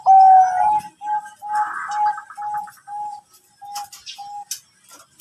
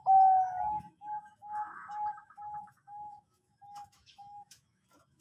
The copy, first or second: second